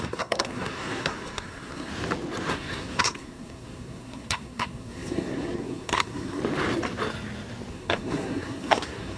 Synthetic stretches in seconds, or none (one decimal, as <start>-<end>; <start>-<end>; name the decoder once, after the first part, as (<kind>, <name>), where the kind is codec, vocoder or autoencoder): 0.0-1.9 (codec, SNAC); 2.5-6.4; 7.7-9.2